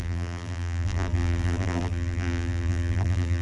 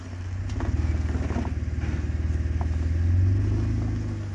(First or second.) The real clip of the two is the second